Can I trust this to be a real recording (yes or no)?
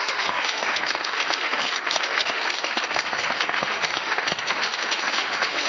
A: no